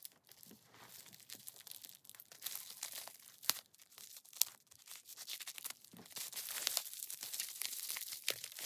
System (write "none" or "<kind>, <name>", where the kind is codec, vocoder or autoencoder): vocoder, BigVGAN v2